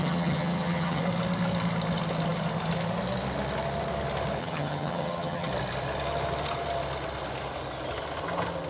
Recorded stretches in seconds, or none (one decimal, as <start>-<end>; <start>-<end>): 1.0-4.4; 5.5-8.7